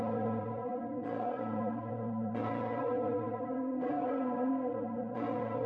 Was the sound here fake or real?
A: fake